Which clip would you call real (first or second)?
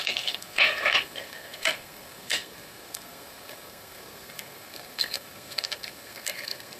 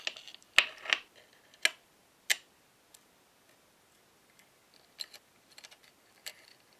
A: second